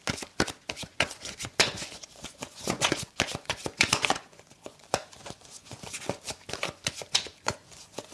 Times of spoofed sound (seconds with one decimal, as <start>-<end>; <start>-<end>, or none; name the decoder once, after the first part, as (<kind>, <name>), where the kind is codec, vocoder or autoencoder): 0.9-5.8 (vocoder, Vocos); 6.6-8.1